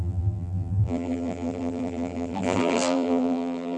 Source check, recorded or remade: remade